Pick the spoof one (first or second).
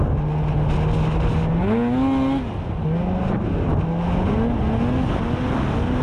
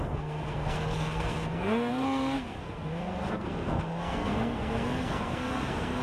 second